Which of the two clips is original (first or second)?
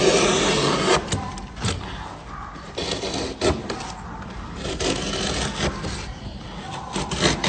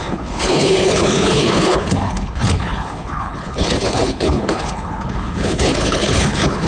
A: first